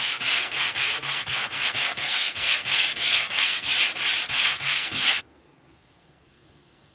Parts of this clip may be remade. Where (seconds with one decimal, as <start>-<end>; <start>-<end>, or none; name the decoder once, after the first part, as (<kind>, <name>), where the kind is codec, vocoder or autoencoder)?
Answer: 0.0-3.7 (codec, SNAC); 4.3-6.9